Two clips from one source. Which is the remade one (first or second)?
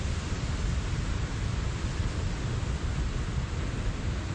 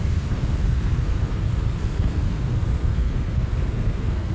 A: second